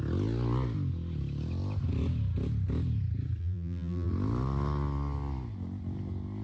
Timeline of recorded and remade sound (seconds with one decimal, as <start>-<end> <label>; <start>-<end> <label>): 0.0-3.4 recorded; 3.4-4.1 remade; 4.1-6.4 recorded